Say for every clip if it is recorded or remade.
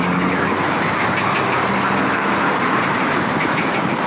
recorded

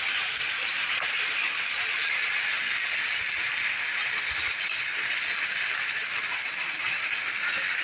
recorded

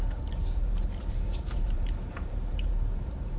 remade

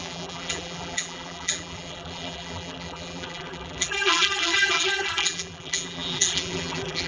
remade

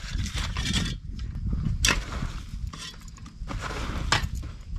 recorded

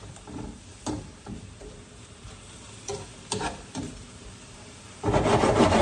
remade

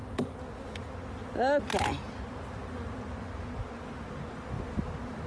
recorded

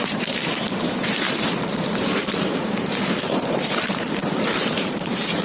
remade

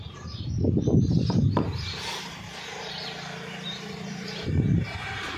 remade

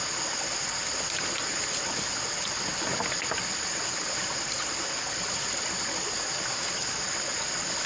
recorded